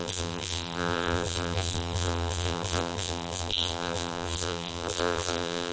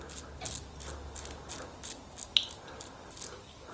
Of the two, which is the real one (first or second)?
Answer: second